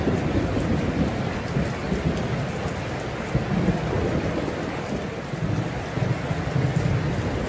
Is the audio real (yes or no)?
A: yes